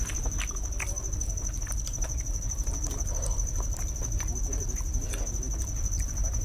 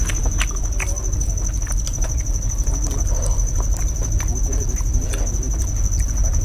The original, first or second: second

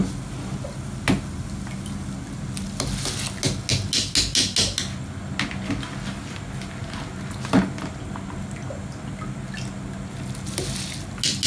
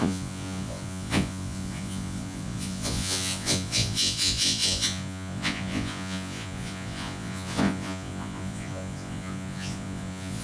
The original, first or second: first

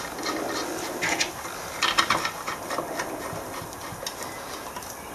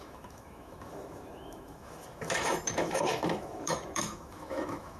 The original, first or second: first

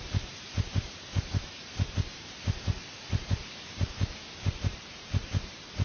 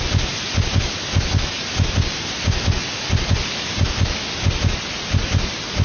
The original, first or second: second